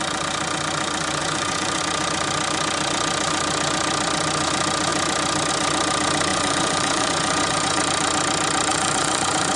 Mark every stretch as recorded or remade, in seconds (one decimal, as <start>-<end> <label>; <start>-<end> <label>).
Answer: 0.0-1.2 recorded; 1.2-1.8 remade; 1.8-6.3 recorded; 6.3-7.8 remade; 7.8-8.7 recorded; 8.7-9.6 remade